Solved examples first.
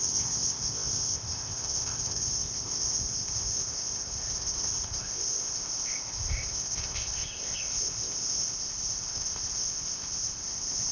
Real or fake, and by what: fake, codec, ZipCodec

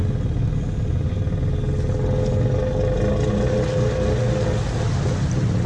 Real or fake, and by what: real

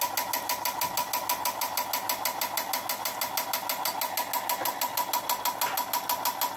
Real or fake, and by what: real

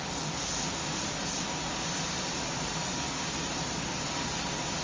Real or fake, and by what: real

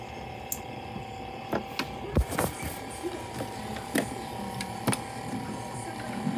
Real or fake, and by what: real